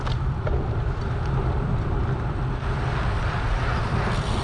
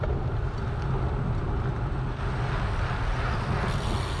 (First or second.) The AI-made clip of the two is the first